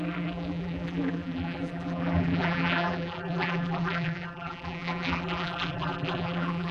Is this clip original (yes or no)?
no